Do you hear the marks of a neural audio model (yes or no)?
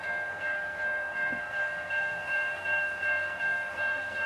yes